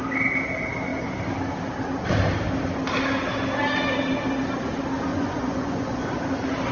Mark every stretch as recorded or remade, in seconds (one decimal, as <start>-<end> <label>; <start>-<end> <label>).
0.0-5.1 recorded; 5.1-6.1 remade; 6.1-6.7 recorded